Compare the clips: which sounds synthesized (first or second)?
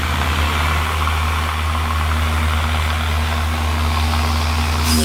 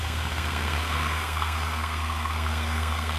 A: second